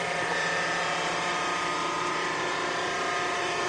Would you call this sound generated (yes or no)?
yes